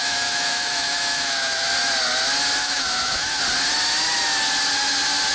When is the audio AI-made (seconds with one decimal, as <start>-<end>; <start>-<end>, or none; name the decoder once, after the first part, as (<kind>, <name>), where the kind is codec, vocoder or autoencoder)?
0.0-1.7 (autoencoder, DAC-VAE); 2.6-3.4